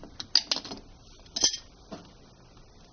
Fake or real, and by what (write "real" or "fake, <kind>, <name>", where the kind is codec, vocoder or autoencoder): real